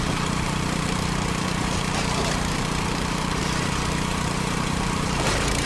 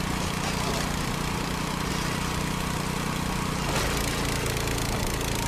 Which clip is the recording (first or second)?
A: second